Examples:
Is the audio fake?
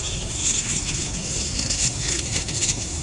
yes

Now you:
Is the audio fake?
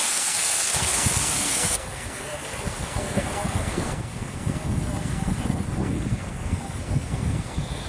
yes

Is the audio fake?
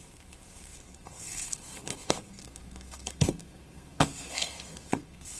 yes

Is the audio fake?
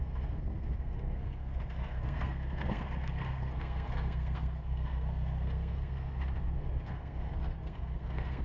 yes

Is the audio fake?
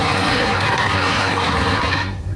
yes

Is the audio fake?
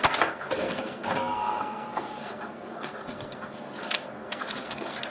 yes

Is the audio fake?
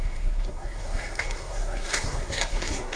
yes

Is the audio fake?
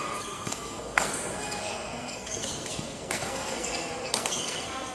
yes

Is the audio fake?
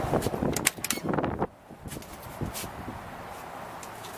no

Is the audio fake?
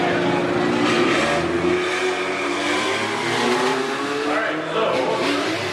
no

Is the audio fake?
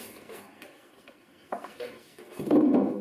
yes